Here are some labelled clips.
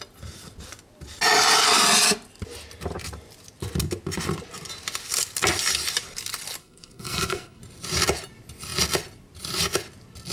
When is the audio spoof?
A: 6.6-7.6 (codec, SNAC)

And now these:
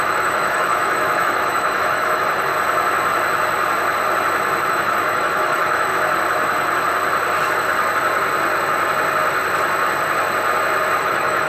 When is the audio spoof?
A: 0.0-2.5 (autoencoder, DAC-VAE); 4.7-5.9; 11.0-11.5

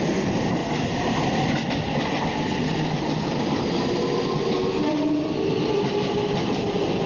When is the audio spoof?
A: none

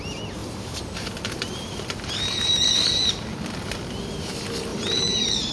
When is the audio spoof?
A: 0.4-3.1 (vocoder, BigVGAN v2); 4.7-5.5

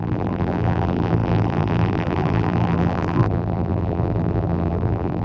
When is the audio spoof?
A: 0.0-5.2 (vocoder, BigVGAN v2)

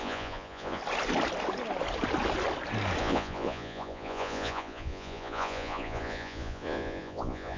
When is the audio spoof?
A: 0.0-0.8 (vocoder, Vocos); 3.0-7.6